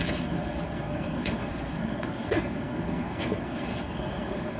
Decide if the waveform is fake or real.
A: fake